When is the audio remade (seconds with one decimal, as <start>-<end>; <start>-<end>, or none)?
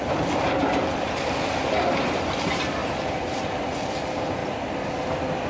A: 0.0-4.4